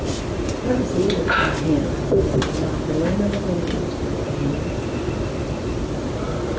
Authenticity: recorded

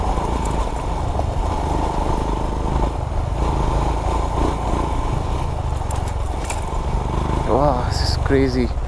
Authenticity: recorded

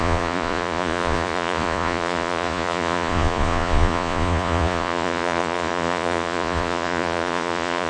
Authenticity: remade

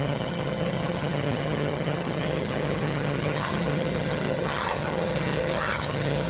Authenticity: remade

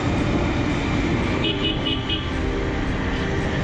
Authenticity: recorded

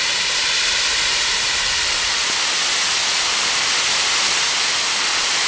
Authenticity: recorded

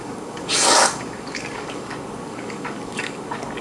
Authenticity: remade